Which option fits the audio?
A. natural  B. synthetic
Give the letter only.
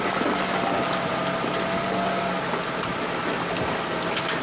A